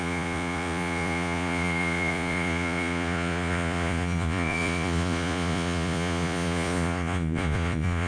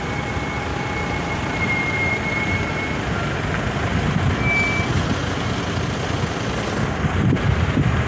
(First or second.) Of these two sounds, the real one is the second